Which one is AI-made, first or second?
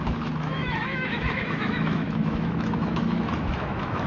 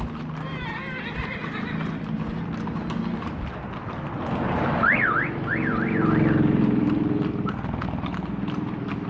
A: first